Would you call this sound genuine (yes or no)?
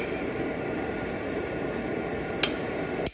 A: yes